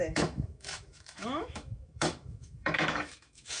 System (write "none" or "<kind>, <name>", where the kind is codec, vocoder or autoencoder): autoencoder, DAC-VAE